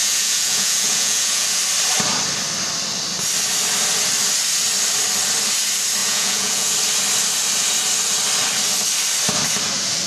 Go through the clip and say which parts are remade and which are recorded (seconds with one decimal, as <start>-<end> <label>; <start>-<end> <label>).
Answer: 0.0-1.6 remade; 1.6-6.0 recorded; 6.0-6.7 remade; 6.7-10.1 recorded